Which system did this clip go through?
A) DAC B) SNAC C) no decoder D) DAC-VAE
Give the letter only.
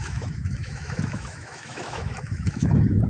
D